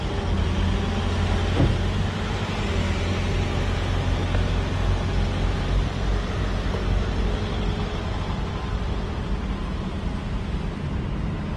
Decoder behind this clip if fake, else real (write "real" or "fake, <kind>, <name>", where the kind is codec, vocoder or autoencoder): real